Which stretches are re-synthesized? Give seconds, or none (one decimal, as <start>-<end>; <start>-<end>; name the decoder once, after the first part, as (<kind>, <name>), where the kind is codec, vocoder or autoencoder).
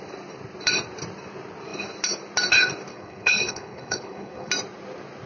2.9-4.5 (codec, HILCodec)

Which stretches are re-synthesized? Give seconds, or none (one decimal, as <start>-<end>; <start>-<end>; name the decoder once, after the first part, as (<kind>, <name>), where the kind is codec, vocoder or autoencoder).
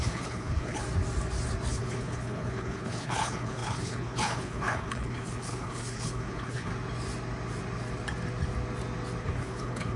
0.0-0.8 (codec, HILCodec); 1.7-6.7; 9.2-10.0